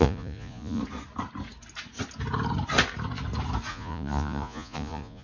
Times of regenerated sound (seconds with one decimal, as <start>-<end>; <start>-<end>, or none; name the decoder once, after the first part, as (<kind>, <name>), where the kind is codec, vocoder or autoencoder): 0.0-0.8 (vocoder, Vocos); 3.7-5.2